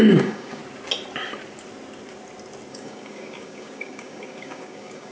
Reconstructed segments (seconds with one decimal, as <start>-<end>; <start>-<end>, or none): 0.0-0.6; 2.7-5.1

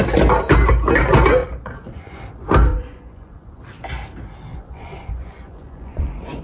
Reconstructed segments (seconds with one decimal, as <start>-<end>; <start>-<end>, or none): 1.4-2.2; 2.7-3.6; 4.5-6.4

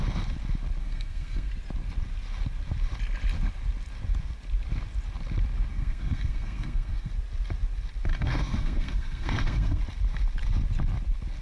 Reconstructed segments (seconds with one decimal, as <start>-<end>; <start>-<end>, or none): 0.8-1.5; 5.7-7.1; 8.1-9.8